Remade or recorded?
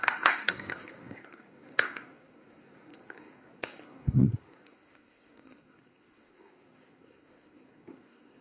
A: remade